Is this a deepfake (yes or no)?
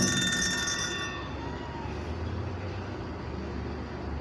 no